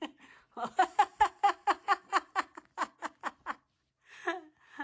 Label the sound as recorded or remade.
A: recorded